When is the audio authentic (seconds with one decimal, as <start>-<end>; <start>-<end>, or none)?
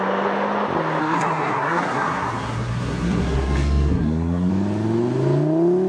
0.0-1.0; 4.5-5.9